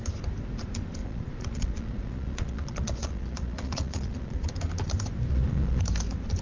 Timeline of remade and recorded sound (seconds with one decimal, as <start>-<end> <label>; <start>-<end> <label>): 0.0-1.0 recorded; 1.0-4.5 remade; 4.5-5.3 recorded; 5.3-5.8 remade; 5.8-6.4 recorded